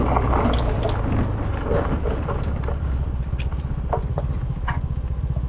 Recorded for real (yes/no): yes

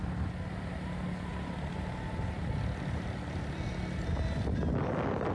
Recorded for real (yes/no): yes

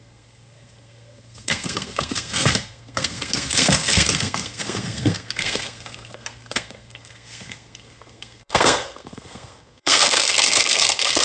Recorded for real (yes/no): no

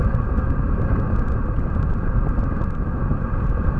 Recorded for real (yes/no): yes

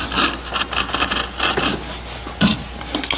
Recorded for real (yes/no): yes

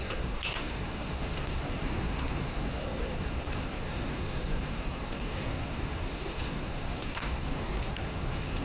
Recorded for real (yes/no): no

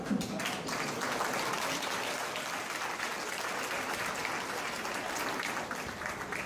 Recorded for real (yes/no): yes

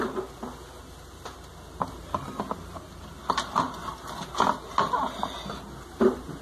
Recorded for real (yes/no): yes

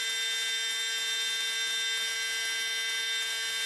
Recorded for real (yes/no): yes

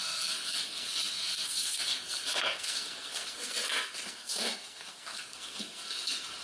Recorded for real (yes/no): no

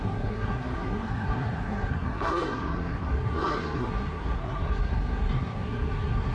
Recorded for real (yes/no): no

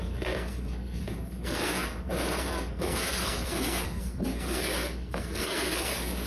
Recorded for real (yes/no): no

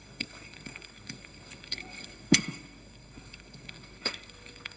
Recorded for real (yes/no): no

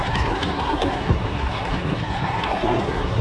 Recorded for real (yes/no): no